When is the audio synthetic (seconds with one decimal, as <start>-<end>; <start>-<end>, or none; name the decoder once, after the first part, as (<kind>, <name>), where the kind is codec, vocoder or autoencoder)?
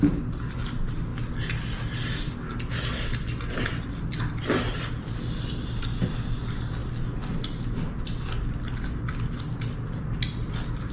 none